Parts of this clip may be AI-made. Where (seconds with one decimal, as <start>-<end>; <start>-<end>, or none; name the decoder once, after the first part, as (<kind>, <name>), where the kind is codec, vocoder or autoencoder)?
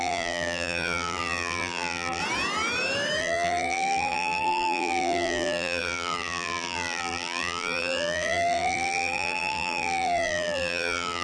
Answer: 0.0-2.2 (vocoder, BigVGAN v2); 3.2-11.2